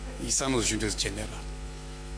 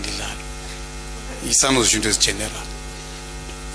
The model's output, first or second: first